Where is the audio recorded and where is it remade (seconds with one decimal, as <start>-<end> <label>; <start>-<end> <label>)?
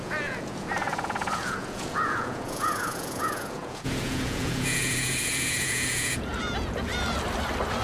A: 0.0-6.9 remade; 6.9-7.8 recorded